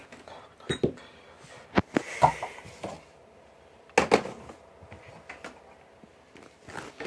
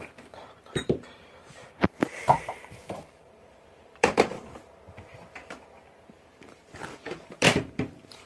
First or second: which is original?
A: first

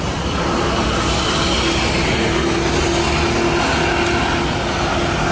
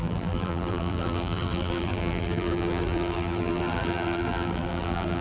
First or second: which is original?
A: first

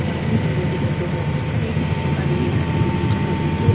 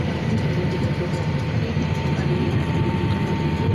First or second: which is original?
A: first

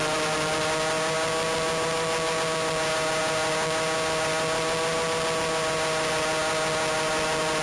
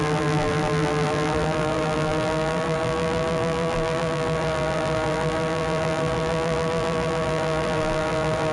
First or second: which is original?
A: first